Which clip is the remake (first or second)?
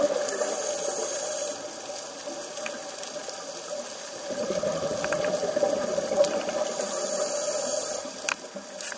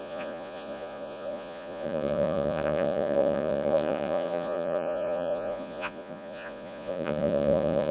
second